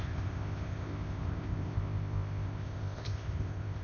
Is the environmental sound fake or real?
fake